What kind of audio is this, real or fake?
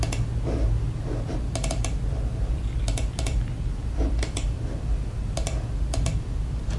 real